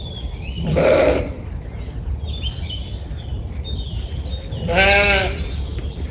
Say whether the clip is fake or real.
real